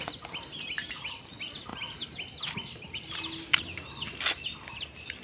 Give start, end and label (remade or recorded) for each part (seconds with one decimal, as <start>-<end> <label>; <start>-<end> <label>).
0.0-5.2 recorded